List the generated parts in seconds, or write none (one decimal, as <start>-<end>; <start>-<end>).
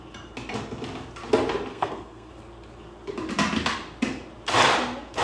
1.7-2.3